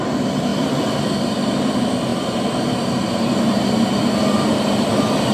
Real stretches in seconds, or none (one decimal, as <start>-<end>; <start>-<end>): 0.0-5.3